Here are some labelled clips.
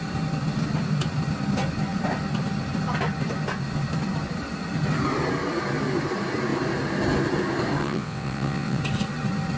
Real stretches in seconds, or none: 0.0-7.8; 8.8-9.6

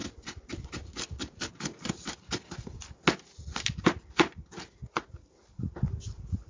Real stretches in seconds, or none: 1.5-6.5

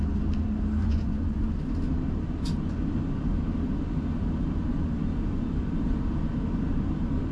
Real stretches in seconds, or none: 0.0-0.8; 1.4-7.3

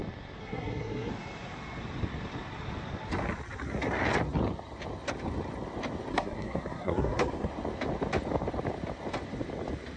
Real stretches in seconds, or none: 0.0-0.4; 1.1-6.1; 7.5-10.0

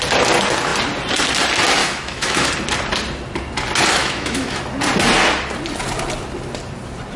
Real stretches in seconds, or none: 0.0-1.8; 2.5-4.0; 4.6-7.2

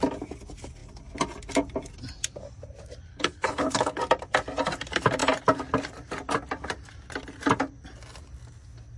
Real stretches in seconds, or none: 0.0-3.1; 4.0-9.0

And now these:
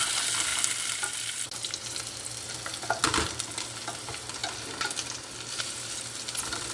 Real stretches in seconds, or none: 0.0-6.7

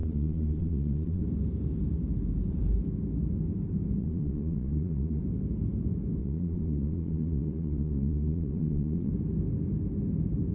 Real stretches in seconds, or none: 1.2-4.0; 5.2-6.2; 9.1-10.5